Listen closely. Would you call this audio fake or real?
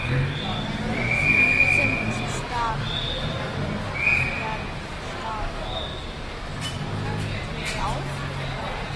real